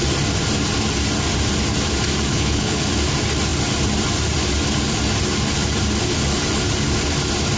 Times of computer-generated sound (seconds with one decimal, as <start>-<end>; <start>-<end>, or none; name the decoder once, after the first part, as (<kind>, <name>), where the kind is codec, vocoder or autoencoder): 2.3-2.9 (codec, HILCodec)